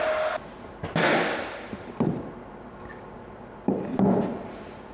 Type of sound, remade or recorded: recorded